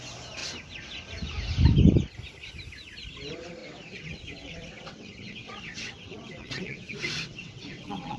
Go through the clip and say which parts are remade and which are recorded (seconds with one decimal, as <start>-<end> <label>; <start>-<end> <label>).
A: 0.0-3.6 recorded; 3.6-8.2 remade